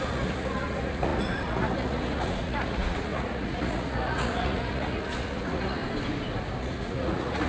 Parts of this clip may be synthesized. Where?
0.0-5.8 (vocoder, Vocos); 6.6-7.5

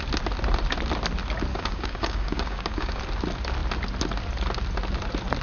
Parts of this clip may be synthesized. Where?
1.5-3.0 (codec, DAC)

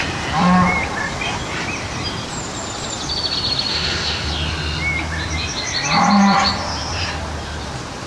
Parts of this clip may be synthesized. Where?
3.7-4.3 (autoencoder, DAC-VAE)

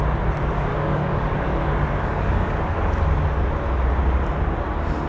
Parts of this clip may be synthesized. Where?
0.7-2.9 (codec, DAC)

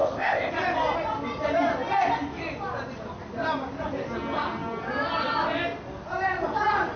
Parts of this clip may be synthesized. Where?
0.0-0.5 (codec, ZipCodec)